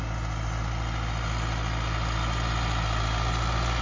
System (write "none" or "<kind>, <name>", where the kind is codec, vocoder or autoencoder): none